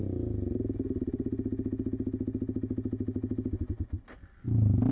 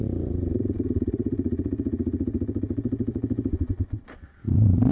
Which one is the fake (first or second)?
second